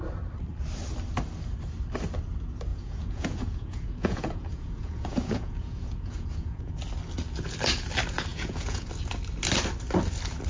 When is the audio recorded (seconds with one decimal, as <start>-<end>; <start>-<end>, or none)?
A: 0.0-2.7; 6.7-8.3; 8.9-10.5